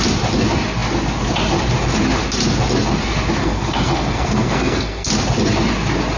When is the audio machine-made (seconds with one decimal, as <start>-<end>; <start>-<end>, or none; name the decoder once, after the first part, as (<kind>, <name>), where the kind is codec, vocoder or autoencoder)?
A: 3.4-5.1 (codec, SNAC)